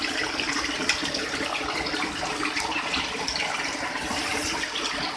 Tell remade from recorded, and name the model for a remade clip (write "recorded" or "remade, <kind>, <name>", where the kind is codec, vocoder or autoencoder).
recorded